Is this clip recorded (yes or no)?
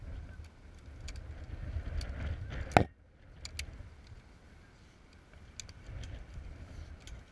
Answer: yes